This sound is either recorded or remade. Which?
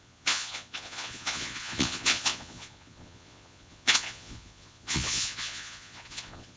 remade